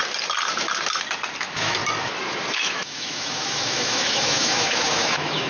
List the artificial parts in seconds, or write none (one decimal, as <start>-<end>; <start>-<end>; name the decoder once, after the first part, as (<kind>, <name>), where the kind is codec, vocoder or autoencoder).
1.4-1.8 (autoencoder, DAC-VAE); 2.5-5.5